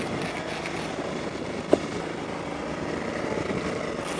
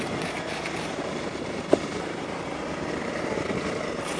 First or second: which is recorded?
first